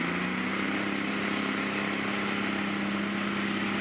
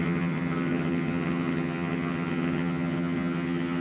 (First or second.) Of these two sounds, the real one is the first